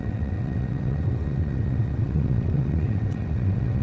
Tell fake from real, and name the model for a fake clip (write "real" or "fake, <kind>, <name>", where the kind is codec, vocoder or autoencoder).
fake, vocoder, WaveNeXt